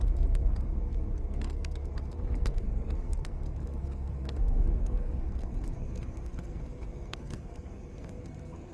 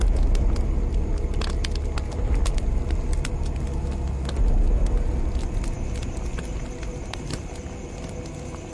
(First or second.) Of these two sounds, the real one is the second